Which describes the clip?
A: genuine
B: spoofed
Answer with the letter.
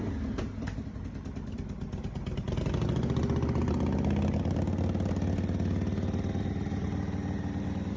A